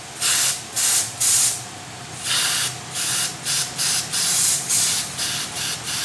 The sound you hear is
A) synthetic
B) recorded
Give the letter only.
B